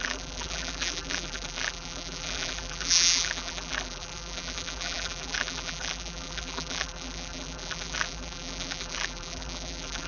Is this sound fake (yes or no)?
yes